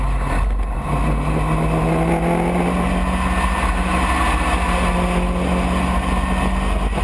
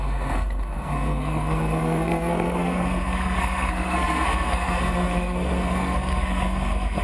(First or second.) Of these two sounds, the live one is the first